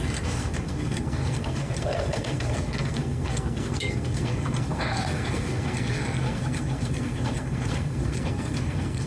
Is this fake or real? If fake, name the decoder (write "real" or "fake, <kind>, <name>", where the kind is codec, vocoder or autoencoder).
fake, codec, SNAC